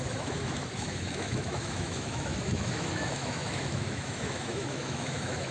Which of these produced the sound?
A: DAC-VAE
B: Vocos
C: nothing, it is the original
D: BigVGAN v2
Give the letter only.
A